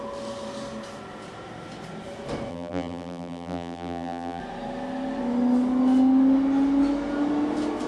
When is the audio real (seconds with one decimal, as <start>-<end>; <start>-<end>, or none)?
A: 0.0-2.5; 4.4-7.9